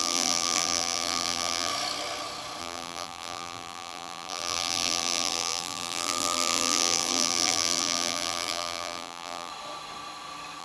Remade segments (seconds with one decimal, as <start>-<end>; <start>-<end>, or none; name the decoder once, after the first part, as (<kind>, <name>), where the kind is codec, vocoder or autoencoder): 0.0-1.7 (vocoder, BigVGAN v2); 2.6-9.5